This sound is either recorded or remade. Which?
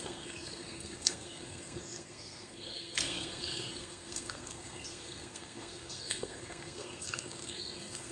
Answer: remade